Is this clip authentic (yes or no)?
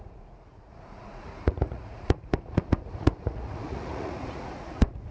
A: no